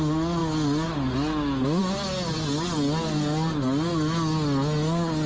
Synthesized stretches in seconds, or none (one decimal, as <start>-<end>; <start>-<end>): none